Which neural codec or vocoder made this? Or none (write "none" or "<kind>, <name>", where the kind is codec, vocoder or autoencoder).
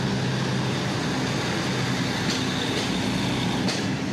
none